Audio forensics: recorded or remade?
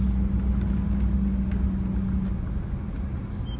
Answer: recorded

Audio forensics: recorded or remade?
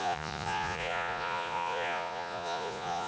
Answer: remade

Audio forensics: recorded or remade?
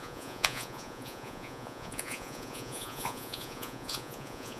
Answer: remade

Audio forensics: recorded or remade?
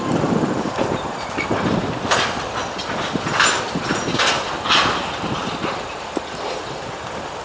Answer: recorded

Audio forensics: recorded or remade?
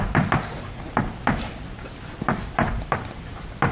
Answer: remade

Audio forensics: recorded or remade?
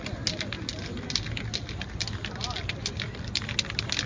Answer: recorded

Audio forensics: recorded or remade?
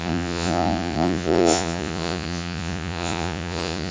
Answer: remade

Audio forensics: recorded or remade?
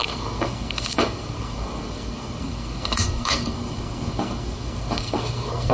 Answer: remade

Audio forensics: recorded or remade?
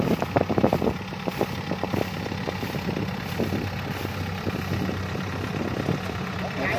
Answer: recorded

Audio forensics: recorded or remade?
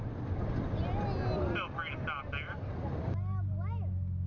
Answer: recorded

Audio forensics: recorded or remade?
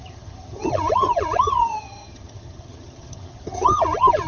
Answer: remade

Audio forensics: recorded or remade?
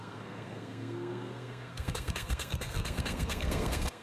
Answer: remade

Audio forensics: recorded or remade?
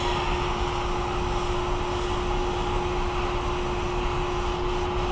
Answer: recorded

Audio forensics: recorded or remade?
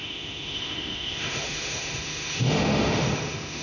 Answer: remade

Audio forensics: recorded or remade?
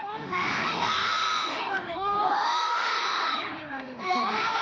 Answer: remade